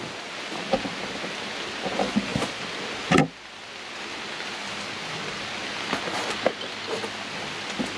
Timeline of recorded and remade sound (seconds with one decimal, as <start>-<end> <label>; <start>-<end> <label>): 0.0-8.0 recorded